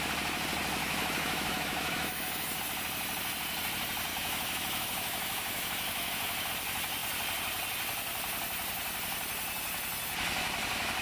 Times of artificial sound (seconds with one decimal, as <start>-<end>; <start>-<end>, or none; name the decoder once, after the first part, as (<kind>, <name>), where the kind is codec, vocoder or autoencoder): 0.8-2.6 (autoencoder, DAC-VAE); 4.1-6.5